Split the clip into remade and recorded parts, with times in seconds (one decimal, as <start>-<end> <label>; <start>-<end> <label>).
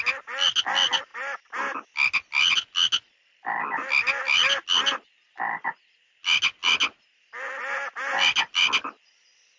0.0-9.6 recorded